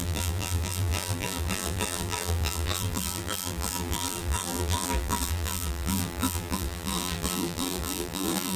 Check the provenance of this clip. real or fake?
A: fake